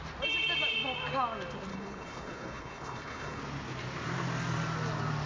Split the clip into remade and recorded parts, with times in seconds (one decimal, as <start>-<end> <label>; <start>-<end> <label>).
0.0-1.7 recorded; 1.7-3.4 remade; 3.4-5.3 recorded